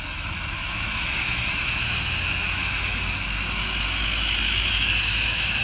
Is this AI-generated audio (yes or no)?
yes